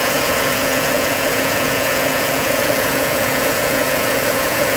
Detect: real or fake fake